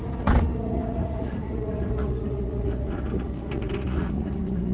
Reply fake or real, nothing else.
fake